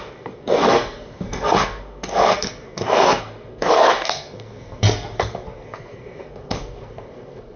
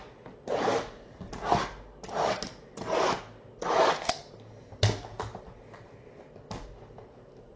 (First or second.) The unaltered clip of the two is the second